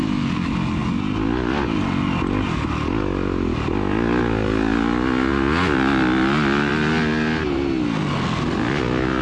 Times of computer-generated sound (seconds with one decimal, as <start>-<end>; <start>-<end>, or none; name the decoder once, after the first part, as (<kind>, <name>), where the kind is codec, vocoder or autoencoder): none